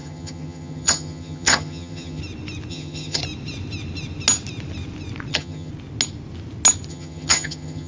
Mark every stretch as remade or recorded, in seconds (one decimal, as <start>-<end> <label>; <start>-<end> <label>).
0.0-2.2 remade; 2.2-2.7 recorded; 2.7-3.2 remade; 3.2-5.3 recorded; 5.3-5.7 remade; 5.7-6.9 recorded; 6.9-7.9 remade